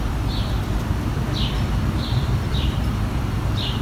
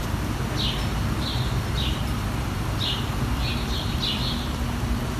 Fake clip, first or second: first